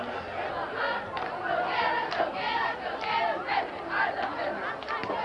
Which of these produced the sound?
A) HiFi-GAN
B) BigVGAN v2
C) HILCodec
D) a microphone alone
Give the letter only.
D